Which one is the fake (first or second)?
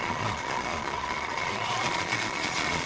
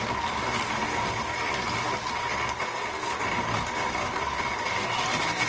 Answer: first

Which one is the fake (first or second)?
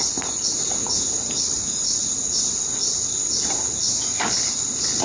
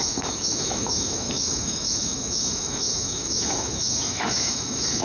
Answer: second